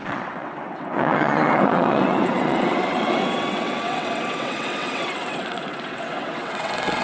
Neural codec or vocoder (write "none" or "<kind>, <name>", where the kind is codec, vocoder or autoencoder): vocoder, WaveNeXt